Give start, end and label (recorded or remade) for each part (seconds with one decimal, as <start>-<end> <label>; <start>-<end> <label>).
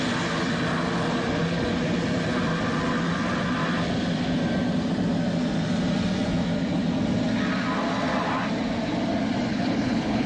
0.0-9.5 recorded; 9.5-10.3 remade